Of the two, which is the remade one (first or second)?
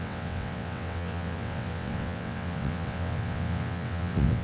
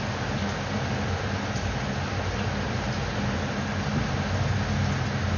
first